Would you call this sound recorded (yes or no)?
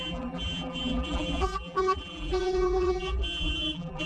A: no